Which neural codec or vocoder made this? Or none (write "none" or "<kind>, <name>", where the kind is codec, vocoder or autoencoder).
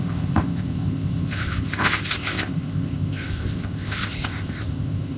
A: codec, ZipCodec